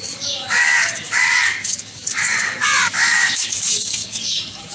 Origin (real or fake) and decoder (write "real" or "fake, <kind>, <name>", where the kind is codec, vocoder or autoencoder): fake, codec, DAC